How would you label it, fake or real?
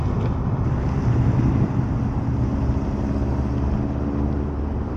real